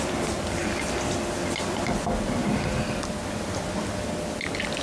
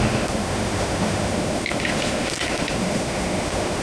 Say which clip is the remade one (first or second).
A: second